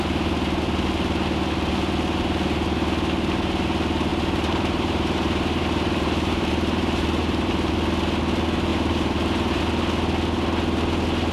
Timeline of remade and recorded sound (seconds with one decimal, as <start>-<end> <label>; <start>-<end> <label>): 0.0-4.1 recorded; 4.1-7.7 remade; 7.7-8.7 recorded; 8.7-9.6 remade; 9.6-11.3 recorded